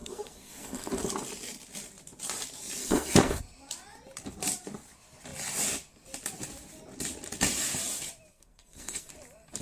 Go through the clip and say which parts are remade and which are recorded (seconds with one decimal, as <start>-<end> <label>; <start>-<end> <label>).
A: 0.0-0.9 remade; 0.9-2.8 recorded; 2.8-3.4 remade; 3.4-8.3 recorded; 8.3-9.1 remade; 9.1-9.6 recorded